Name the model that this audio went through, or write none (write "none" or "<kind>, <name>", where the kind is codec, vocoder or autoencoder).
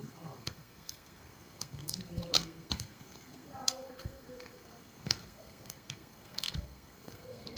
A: codec, SNAC